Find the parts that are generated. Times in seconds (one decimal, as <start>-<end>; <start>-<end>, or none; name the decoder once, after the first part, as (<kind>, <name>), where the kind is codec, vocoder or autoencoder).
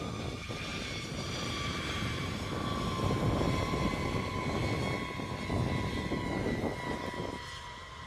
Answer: 0.7-2.3 (vocoder, BigVGAN v2)